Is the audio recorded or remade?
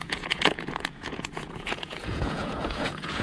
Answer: remade